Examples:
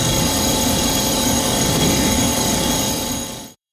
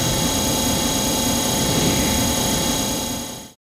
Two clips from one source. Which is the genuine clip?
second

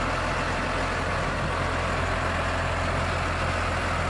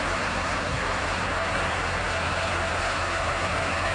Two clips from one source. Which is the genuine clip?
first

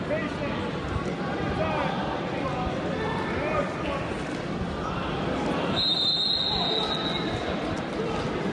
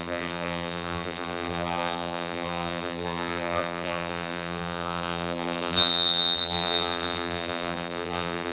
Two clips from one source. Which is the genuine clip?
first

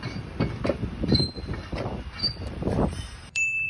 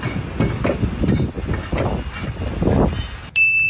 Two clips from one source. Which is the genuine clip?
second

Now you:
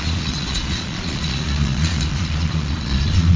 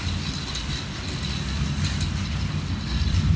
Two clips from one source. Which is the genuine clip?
second